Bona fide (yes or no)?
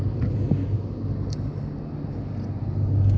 yes